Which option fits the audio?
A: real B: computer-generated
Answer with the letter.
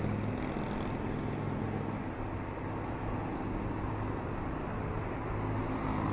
A